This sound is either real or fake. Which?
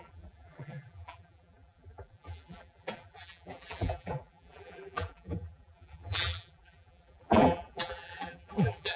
fake